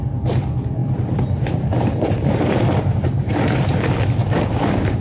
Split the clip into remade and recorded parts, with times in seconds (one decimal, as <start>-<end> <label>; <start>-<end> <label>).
0.0-0.8 recorded; 0.8-3.8 remade; 3.8-4.2 recorded; 4.2-5.0 remade